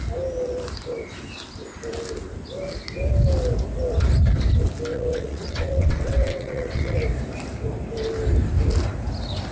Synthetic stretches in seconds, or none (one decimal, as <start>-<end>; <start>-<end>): 4.9-7.0